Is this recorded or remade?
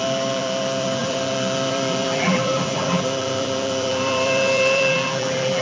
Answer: remade